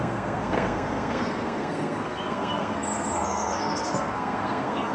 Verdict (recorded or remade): remade